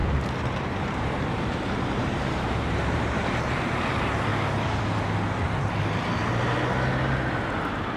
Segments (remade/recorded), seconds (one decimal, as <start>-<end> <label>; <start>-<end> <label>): 0.0-3.4 remade; 3.4-8.0 recorded

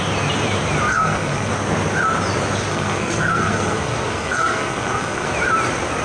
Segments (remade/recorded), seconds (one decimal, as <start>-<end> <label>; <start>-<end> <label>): 0.0-0.9 recorded; 0.9-1.5 remade; 1.5-2.7 recorded; 2.7-5.3 remade; 5.3-6.0 recorded

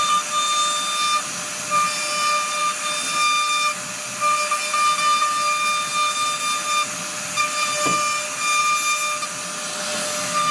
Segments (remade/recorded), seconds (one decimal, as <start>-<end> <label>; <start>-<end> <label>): 0.0-10.5 recorded

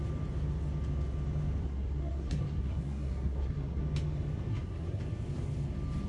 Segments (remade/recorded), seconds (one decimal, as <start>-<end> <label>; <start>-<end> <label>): 0.0-1.6 recorded; 1.6-3.8 remade; 3.8-4.5 recorded; 4.5-5.0 remade; 5.0-6.1 recorded

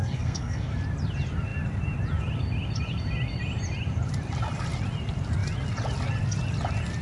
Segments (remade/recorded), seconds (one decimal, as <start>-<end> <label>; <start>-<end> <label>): 0.0-0.7 remade; 0.7-7.0 recorded